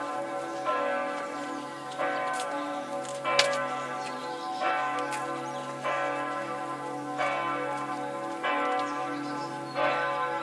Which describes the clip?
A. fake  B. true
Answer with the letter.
B